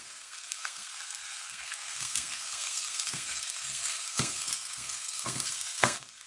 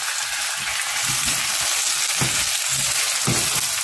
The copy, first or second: first